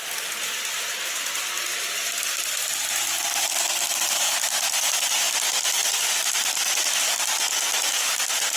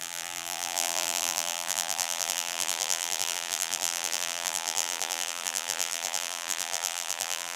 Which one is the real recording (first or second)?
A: first